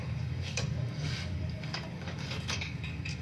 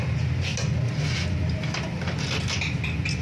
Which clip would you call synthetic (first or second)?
first